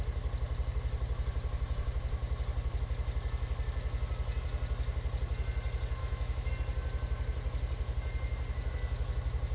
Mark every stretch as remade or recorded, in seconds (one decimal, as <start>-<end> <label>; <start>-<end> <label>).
0.0-6.0 recorded; 6.0-6.5 remade; 6.5-9.5 recorded